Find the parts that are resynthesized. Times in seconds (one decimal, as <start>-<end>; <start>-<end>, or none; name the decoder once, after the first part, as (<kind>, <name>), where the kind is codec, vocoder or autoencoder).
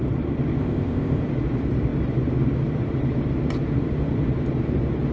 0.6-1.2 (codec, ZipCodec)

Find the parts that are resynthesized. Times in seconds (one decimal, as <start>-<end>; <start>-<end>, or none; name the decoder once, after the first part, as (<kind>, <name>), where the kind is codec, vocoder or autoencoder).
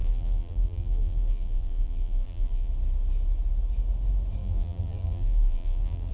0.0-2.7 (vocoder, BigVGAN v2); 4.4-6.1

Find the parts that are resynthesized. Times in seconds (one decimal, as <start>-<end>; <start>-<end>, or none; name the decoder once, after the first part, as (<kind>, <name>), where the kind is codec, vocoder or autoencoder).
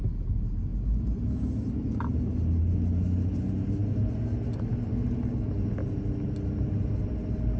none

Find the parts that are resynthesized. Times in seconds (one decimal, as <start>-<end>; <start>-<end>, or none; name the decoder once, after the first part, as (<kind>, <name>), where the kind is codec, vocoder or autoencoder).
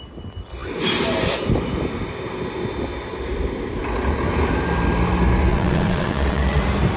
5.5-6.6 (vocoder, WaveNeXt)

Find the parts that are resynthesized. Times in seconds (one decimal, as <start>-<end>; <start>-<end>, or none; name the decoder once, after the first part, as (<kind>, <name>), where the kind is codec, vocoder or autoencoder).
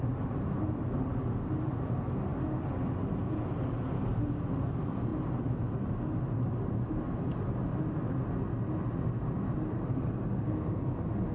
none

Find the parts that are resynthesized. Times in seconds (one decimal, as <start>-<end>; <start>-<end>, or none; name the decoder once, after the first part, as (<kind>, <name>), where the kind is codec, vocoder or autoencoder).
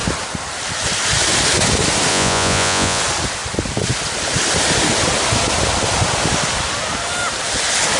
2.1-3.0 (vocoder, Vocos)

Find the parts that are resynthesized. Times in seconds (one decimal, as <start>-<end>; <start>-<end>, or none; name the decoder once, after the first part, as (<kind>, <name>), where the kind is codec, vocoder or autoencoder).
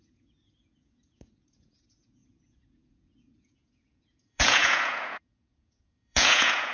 0.0-6.7 (vocoder, Vocos)